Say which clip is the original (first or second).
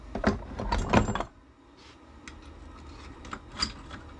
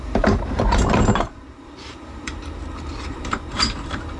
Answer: first